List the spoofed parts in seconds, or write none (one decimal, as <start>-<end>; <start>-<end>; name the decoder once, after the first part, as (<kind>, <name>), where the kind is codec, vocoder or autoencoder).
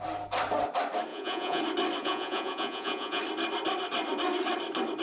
1.1-1.6 (vocoder, Vocos); 2.0-3.2